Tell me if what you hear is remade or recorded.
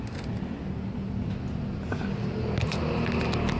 recorded